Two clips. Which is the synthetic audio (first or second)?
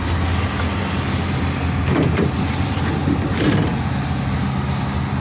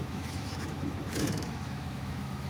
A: second